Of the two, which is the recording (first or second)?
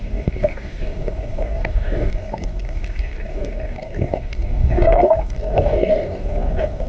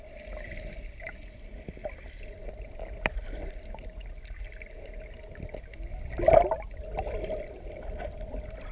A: second